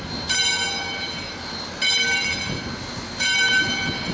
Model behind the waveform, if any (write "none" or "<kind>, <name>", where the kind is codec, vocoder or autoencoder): none